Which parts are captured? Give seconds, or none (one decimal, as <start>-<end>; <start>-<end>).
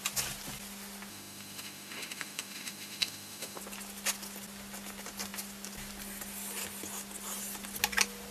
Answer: 0.0-1.1; 3.6-8.3